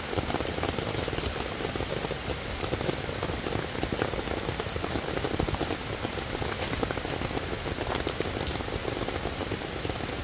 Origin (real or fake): real